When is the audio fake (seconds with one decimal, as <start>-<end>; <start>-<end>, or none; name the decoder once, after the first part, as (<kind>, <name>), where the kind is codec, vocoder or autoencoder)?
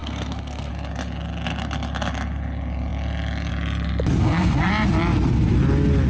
0.0-0.7 (codec, SNAC); 4.2-4.7